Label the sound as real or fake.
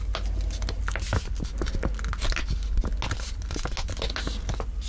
real